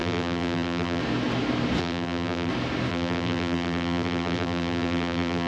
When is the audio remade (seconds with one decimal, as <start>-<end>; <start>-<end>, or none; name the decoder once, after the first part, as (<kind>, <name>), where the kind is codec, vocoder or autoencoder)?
0.0-1.0 (vocoder, BigVGAN v2); 1.8-2.5; 2.9-5.5